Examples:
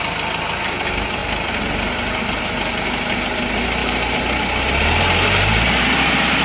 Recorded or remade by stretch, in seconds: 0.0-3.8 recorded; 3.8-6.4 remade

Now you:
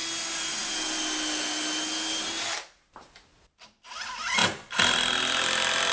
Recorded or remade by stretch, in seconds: 0.0-5.9 recorded

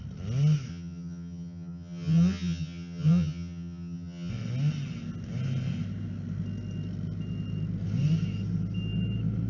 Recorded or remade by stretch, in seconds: 0.0-0.7 recorded; 0.7-4.3 remade; 4.3-9.5 recorded

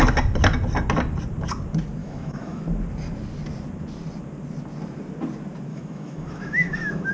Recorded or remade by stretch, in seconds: 0.0-2.0 recorded; 2.0-2.6 remade; 2.6-5.7 recorded; 5.7-7.1 remade

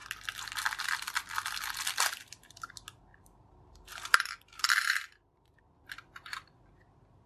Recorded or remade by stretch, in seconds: 0.0-3.1 recorded; 3.1-5.6 remade; 5.6-7.3 recorded